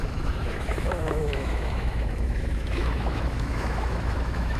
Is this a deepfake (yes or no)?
yes